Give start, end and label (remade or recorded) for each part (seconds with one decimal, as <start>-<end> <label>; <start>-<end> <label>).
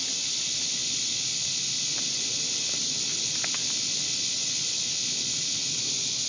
0.0-6.3 recorded